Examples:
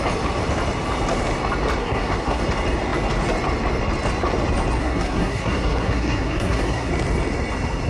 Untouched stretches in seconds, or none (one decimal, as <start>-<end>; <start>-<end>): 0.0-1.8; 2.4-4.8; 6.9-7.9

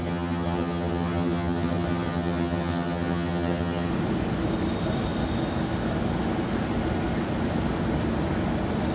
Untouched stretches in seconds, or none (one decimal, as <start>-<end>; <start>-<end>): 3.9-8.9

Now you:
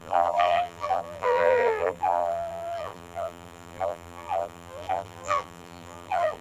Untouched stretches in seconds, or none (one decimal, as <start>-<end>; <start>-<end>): none